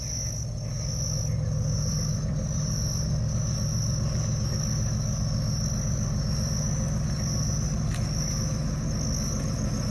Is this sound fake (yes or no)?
no